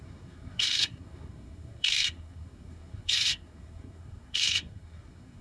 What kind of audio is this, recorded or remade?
remade